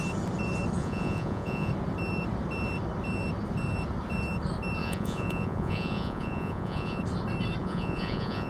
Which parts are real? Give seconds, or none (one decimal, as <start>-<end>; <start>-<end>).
0.0-0.8; 1.7-4.8; 7.0-7.6